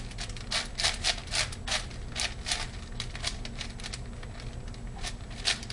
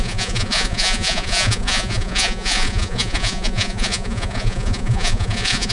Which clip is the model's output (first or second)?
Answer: second